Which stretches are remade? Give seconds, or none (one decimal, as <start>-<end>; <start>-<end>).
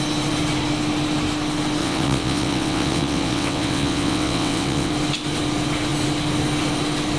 1.8-4.9